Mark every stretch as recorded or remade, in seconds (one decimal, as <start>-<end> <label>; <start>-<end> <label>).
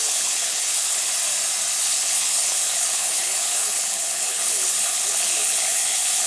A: 0.0-1.1 remade; 1.1-1.8 recorded; 1.8-6.3 remade